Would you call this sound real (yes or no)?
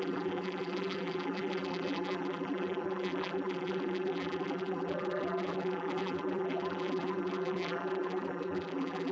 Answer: no